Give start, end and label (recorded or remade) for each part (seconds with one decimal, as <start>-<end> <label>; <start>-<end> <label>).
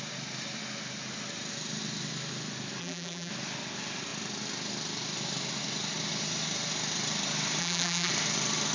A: 0.0-2.8 recorded; 2.8-3.3 remade; 3.3-7.6 recorded; 7.6-8.1 remade; 8.1-8.7 recorded